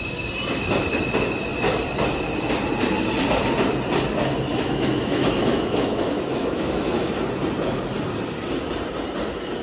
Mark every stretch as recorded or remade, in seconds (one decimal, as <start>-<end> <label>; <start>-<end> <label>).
0.0-4.5 recorded; 4.5-7.1 remade; 7.1-9.6 recorded